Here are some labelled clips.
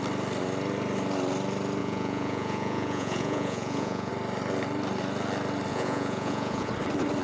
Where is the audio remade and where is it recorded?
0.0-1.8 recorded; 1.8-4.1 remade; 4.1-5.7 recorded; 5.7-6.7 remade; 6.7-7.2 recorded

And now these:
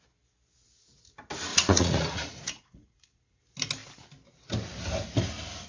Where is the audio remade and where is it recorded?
0.0-1.5 recorded; 1.5-3.4 remade; 3.4-5.7 recorded

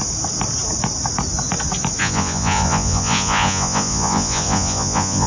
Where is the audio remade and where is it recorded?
0.0-2.0 recorded; 2.0-5.3 remade